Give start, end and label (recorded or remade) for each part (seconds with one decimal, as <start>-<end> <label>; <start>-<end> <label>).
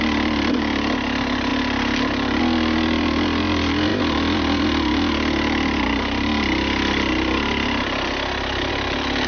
0.0-9.3 recorded